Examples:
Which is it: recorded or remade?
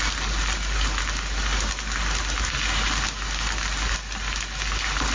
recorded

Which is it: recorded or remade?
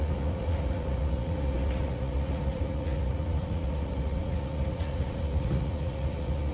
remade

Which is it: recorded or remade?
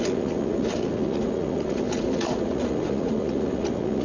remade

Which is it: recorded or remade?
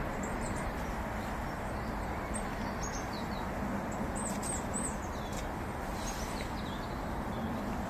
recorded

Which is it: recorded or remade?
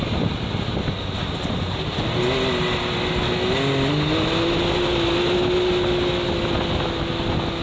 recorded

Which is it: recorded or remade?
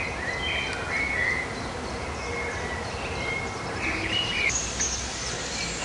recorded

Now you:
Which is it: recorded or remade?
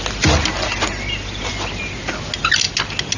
recorded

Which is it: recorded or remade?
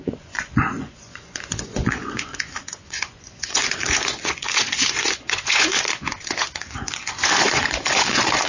remade